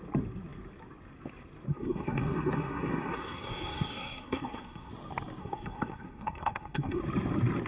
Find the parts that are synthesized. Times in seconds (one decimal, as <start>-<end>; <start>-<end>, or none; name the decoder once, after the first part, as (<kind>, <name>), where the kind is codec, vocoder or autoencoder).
1.7-4.9 (codec, SNAC); 5.4-7.0

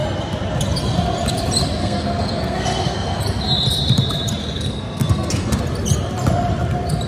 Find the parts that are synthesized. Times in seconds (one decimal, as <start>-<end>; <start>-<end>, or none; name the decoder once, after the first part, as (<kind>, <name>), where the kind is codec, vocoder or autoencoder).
1.8-3.2 (codec, SNAC); 4.4-5.6

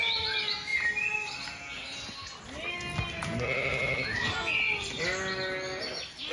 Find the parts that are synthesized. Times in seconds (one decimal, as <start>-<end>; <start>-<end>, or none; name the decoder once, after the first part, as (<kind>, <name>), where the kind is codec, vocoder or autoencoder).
none

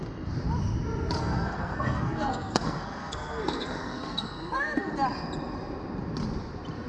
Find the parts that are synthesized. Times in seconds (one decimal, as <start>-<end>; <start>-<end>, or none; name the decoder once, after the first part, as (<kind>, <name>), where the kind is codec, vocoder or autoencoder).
1.2-4.9 (codec, SNAC)

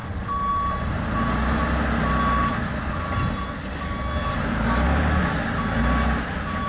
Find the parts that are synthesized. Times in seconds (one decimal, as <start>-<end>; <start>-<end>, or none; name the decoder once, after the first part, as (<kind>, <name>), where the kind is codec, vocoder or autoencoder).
none